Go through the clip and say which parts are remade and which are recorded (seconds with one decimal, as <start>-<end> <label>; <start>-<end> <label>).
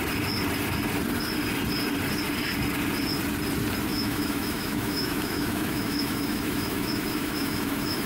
0.0-3.9 recorded; 3.9-8.0 remade